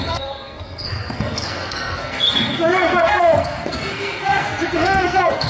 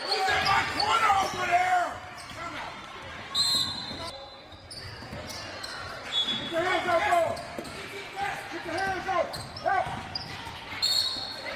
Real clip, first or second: second